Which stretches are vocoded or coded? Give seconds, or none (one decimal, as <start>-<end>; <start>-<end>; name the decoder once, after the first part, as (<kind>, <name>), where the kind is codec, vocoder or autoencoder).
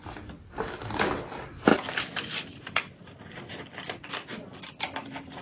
none